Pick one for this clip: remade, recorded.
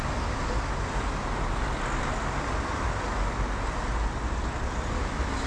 recorded